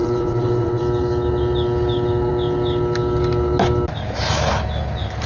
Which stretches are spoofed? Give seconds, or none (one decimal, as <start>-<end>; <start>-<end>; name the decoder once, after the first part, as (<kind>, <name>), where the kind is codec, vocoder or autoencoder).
0.0-0.8 (vocoder, WaveNeXt)